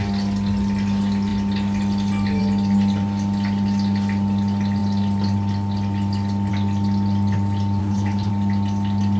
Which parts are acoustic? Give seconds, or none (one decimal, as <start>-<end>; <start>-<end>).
0.0-7.8; 8.3-9.2